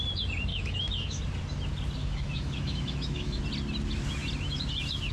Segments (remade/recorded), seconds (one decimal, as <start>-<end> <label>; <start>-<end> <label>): 0.0-0.5 recorded; 0.5-1.2 remade; 1.2-2.0 recorded; 2.0-3.4 remade; 3.4-5.1 recorded